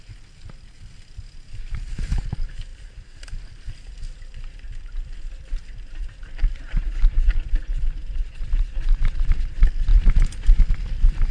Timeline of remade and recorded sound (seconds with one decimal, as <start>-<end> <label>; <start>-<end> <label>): 0.0-11.3 recorded

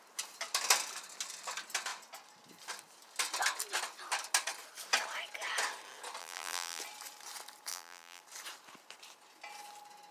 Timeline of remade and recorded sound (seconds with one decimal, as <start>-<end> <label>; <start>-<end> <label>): 0.0-6.2 recorded; 6.2-6.8 remade; 6.8-7.7 recorded; 7.7-8.2 remade; 8.2-10.1 recorded